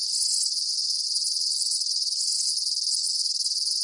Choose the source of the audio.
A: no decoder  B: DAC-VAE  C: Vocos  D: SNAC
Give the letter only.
A